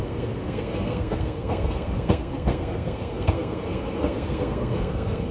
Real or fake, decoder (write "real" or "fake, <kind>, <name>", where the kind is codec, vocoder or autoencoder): fake, codec, SNAC